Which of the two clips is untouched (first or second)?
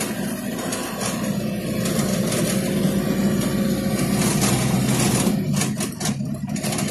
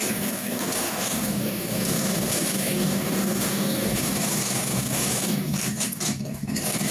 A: first